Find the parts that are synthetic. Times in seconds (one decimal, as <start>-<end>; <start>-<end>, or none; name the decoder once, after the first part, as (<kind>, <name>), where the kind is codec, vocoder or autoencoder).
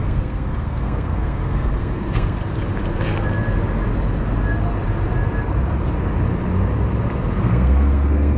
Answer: 0.0-2.4 (codec, SNAC); 7.4-8.4